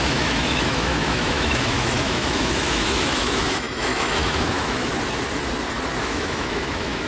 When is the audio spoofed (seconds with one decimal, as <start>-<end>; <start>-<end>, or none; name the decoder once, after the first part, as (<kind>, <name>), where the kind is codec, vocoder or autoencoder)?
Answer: 0.0-4.9 (autoencoder, DAC-VAE); 6.0-7.1